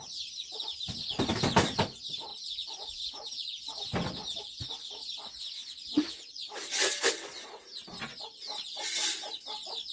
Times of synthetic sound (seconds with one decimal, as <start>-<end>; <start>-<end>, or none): 2.3-3.1; 5.0-6.3